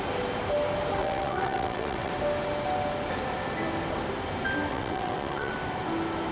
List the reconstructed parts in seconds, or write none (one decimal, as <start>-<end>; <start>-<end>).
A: 1.0-2.1; 4.7-5.5